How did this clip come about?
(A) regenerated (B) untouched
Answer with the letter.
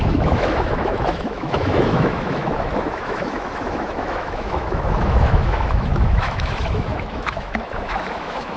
A